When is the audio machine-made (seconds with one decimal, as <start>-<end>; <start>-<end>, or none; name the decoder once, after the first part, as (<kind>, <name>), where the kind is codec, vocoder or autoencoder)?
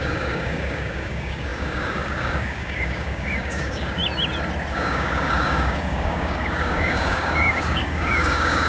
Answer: 0.0-4.0 (codec, DAC); 4.7-8.7